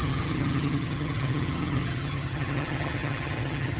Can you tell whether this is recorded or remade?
remade